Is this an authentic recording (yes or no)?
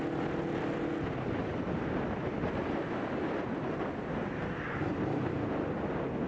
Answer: yes